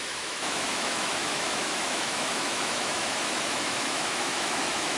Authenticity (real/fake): fake